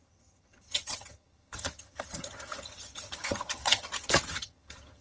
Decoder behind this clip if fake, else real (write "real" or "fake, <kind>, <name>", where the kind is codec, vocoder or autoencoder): fake, vocoder, HiFi-GAN